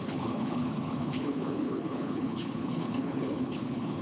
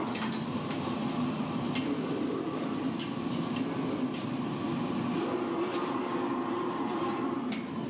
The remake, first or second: first